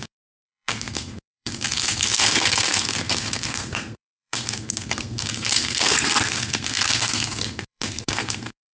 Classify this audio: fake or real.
fake